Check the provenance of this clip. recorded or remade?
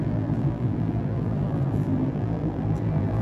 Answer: remade